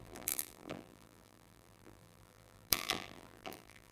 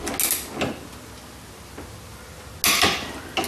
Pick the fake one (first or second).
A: first